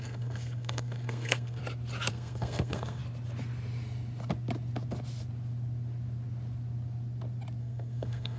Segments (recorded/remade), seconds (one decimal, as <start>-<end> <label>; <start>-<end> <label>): 0.0-1.6 remade; 1.6-2.1 recorded; 2.1-3.0 remade; 3.0-7.6 recorded; 7.6-8.4 remade